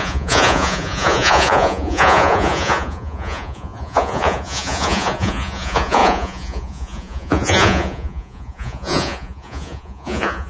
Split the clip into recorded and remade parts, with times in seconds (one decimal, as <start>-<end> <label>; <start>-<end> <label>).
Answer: 0.0-10.5 remade